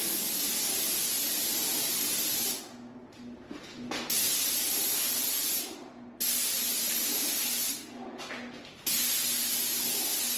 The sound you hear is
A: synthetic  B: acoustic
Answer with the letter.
B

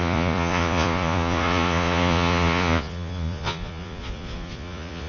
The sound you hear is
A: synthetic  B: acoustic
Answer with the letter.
A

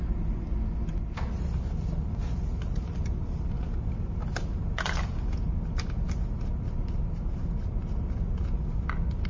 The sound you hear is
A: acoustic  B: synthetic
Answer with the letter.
A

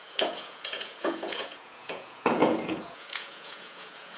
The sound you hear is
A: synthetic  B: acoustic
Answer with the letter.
A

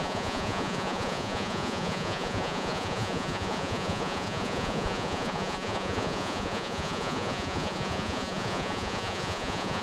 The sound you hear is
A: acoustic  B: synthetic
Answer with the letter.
B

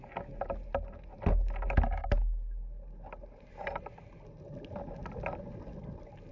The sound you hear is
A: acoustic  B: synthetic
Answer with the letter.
A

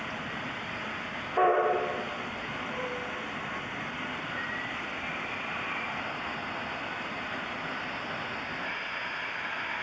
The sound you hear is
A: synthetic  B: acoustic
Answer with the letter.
B